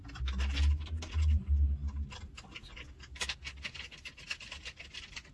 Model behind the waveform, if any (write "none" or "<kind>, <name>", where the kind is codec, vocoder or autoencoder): none